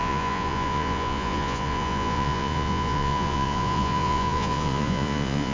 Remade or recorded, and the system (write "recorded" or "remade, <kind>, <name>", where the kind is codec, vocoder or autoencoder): remade, vocoder, Vocos